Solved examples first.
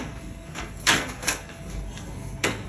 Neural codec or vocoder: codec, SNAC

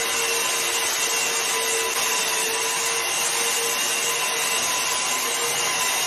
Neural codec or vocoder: none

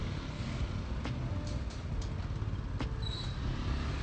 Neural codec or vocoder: none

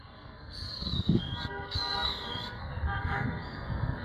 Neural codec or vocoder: codec, SNAC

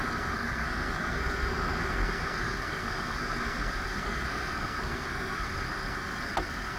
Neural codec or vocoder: codec, SNAC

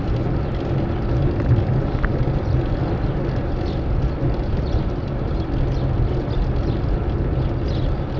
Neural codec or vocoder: none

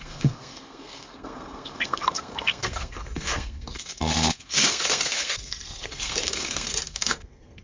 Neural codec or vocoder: codec, SNAC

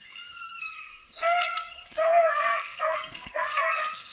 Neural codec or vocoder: codec, SNAC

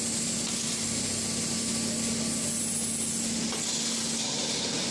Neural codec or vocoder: none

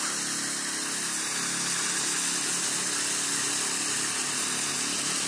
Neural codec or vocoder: none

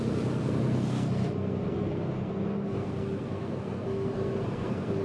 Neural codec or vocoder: codec, SNAC